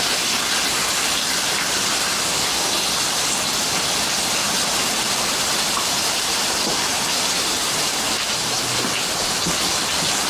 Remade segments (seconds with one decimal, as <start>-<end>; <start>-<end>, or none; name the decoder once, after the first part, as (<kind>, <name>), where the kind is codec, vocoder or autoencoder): 4.4-8.6 (vocoder, BigVGAN v2)